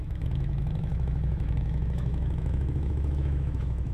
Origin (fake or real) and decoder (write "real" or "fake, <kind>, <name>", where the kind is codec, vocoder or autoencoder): fake, autoencoder, DAC-VAE